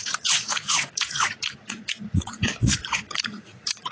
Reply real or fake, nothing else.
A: fake